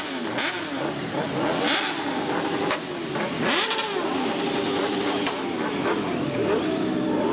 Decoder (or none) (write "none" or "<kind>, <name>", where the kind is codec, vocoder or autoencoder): none